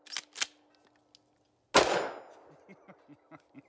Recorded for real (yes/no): yes